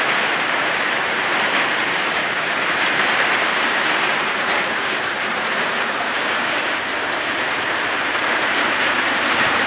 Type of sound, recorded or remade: remade